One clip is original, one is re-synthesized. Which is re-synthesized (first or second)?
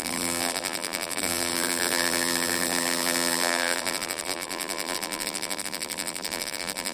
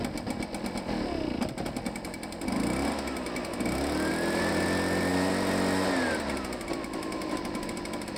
first